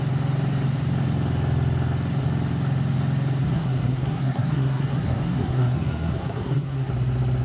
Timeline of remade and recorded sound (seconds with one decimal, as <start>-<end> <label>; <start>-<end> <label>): 0.0-3.4 recorded; 3.4-6.9 remade; 6.9-7.4 recorded